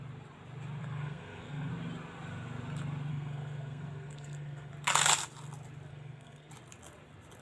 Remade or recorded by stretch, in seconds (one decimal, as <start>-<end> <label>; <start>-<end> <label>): 0.0-0.8 recorded; 0.8-1.7 remade; 1.7-3.1 recorded; 3.1-4.7 remade; 4.7-5.9 recorded; 5.9-6.5 remade; 6.5-7.4 recorded

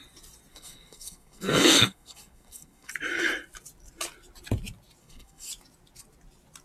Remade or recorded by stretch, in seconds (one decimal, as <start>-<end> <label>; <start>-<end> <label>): 0.0-0.5 recorded; 0.5-2.9 remade; 2.9-5.0 recorded; 5.0-5.5 remade; 5.5-6.6 recorded

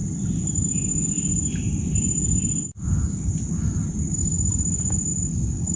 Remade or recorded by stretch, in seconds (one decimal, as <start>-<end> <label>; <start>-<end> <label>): 0.0-5.8 recorded

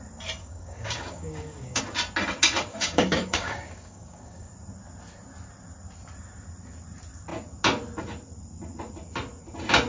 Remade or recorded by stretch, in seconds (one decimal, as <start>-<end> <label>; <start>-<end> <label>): 0.0-0.4 recorded; 0.4-1.8 remade; 1.8-2.7 recorded; 2.7-4.5 remade; 4.5-9.9 recorded

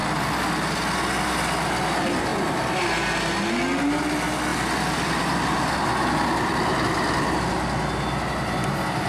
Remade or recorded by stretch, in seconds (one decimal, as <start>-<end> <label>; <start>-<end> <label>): 0.0-4.5 recorded; 4.5-7.5 remade; 7.5-9.1 recorded

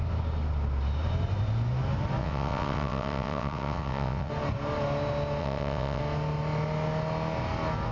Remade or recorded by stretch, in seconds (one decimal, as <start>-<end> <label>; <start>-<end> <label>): 0.0-2.2 recorded; 2.2-4.3 remade; 4.3-5.4 recorded; 5.4-6.0 remade; 6.0-7.9 recorded

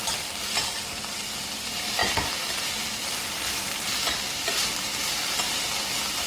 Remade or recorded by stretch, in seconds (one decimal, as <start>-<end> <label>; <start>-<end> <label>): 0.0-2.0 recorded; 2.0-5.8 remade; 5.8-6.3 recorded

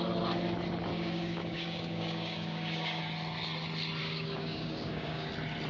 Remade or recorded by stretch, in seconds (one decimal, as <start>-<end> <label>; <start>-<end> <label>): 0.0-0.9 recorded; 0.9-3.0 remade; 3.0-4.0 recorded; 4.0-5.3 remade; 5.3-5.7 recorded